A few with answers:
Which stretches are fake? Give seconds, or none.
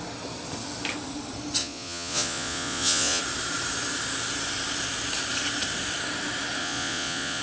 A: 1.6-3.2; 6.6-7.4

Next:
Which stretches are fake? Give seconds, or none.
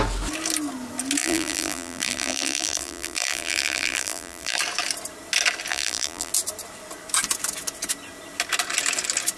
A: 1.2-4.6; 5.7-6.3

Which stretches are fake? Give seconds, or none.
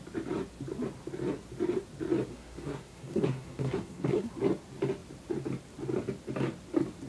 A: 2.3-4.3